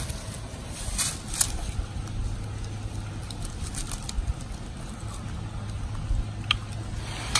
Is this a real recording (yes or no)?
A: yes